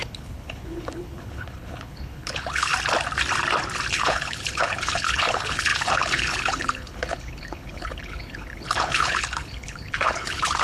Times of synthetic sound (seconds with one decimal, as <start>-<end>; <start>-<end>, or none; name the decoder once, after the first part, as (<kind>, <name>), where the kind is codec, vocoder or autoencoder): 0.0-2.7 (codec, HILCodec); 3.9-10.6